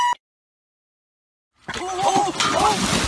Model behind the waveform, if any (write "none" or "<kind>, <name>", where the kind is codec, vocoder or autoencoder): none